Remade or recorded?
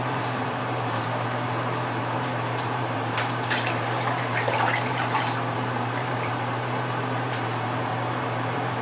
remade